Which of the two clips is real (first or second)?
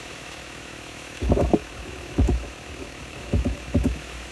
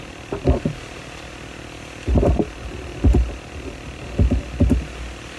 second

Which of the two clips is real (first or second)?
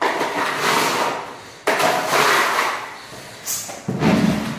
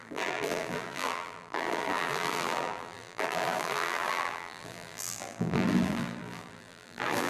first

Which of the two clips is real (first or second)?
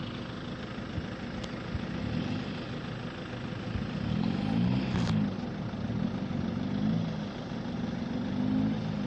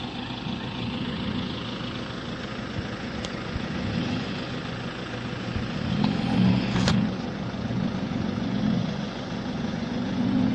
first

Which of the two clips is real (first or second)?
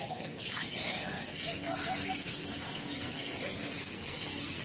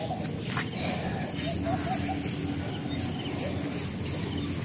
second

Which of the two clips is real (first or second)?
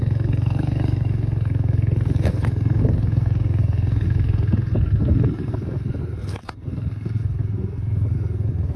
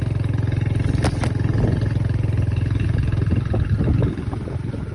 second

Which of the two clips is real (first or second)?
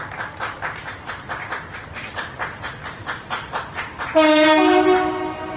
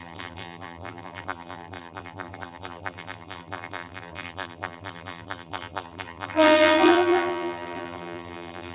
first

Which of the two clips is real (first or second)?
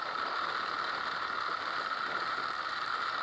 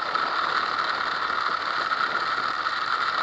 second